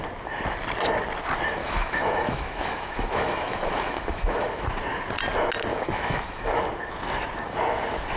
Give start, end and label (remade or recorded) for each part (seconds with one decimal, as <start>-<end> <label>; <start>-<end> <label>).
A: 0.0-1.6 recorded; 1.6-4.6 remade; 4.6-5.7 recorded; 5.7-6.6 remade; 6.6-8.2 recorded